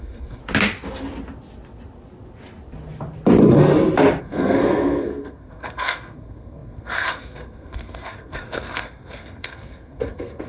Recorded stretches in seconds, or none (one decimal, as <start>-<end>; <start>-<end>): 0.4-4.2